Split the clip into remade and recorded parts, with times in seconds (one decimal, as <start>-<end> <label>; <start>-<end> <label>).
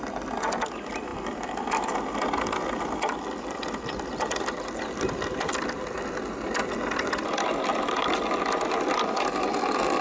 0.0-10.0 recorded